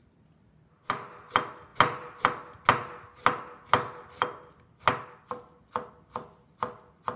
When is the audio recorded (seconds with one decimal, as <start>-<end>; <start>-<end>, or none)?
0.0-7.2